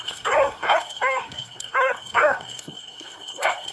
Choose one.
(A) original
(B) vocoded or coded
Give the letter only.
B